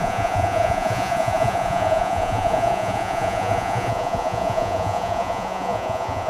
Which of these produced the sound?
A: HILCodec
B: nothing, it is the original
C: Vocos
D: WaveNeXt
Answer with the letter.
C